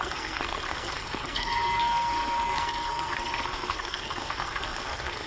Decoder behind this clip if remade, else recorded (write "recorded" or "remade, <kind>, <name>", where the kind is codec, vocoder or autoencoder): remade, codec, SNAC